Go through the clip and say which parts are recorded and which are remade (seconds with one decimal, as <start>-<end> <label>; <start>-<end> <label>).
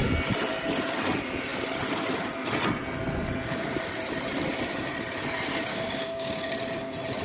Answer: 0.0-5.7 recorded; 5.7-6.5 remade; 6.5-7.2 recorded